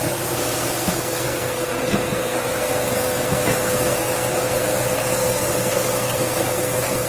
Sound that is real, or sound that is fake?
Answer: fake